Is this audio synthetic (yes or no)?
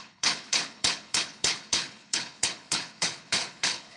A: yes